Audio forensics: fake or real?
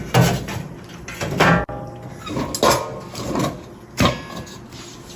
real